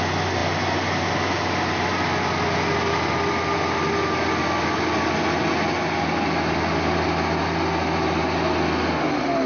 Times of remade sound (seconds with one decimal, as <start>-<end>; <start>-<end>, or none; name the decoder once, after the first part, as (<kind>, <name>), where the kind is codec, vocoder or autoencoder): none